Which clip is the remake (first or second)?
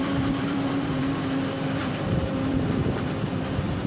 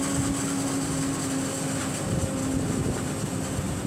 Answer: first